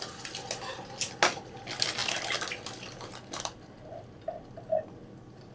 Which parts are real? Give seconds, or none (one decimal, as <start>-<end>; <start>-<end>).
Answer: 0.0-5.5

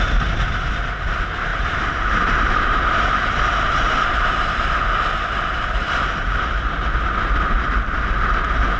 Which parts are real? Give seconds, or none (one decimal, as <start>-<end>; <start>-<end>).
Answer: 0.0-1.5; 4.6-5.2; 6.4-8.8

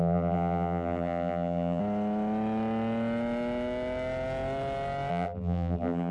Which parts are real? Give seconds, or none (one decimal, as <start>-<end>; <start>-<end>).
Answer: 1.8-5.1

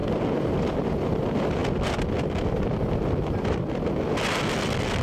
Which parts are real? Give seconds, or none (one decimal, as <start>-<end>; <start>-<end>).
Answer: 0.0-5.0

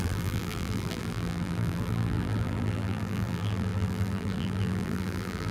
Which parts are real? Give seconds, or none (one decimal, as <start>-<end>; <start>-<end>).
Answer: none

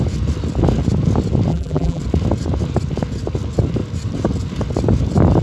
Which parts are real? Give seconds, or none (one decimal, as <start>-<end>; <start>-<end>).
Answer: 0.0-1.5; 2.0-5.4

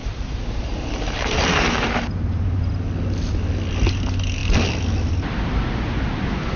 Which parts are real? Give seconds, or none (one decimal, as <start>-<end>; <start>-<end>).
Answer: 2.7-6.6

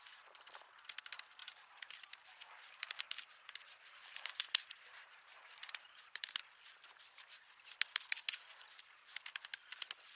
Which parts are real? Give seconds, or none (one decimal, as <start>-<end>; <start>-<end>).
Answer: 0.0-1.4; 6.3-10.2